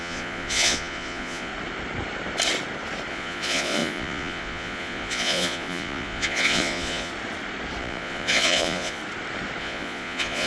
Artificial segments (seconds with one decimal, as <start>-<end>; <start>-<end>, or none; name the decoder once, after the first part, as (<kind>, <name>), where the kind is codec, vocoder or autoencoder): 0.0-1.5 (vocoder, Vocos); 3.1-7.1; 7.8-9.0; 9.6-10.5